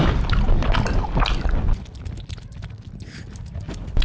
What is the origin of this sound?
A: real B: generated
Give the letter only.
A